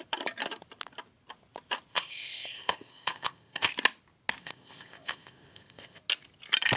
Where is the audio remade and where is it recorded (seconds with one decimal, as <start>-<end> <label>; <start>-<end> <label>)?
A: 0.0-1.9 recorded; 1.9-3.7 remade; 3.7-4.4 recorded; 4.4-6.0 remade; 6.0-6.8 recorded